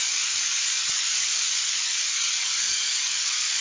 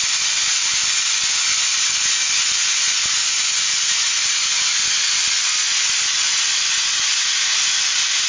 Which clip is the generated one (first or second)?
first